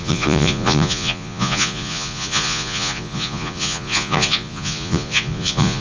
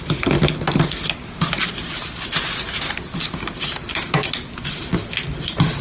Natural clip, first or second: second